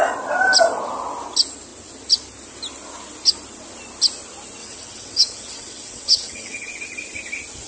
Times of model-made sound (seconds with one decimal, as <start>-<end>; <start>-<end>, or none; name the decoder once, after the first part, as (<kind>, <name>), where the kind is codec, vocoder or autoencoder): 4.6-6.7 (vocoder, WaveNeXt)